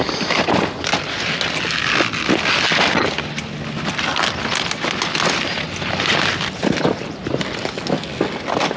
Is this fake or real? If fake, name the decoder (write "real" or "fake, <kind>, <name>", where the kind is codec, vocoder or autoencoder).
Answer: real